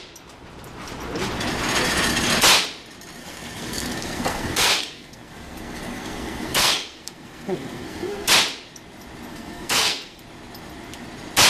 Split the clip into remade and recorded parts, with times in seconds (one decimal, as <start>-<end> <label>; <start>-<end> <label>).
0.0-3.2 recorded; 3.2-8.3 remade; 8.3-9.3 recorded; 9.3-10.2 remade; 10.2-11.5 recorded